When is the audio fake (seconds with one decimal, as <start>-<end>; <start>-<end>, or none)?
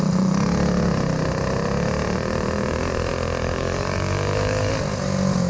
3.4-4.7